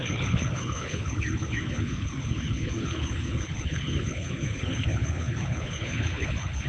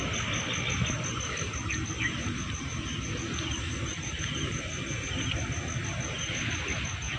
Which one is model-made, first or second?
first